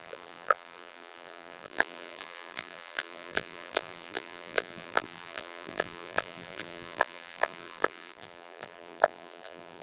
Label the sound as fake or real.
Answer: fake